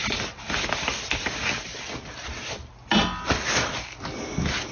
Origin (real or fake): real